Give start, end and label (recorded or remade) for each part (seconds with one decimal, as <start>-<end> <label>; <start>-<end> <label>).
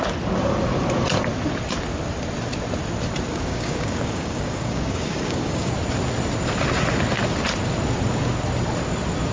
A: 0.0-3.3 recorded; 3.3-5.7 remade; 5.7-9.3 recorded